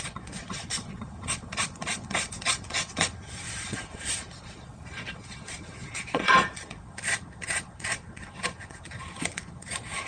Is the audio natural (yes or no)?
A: no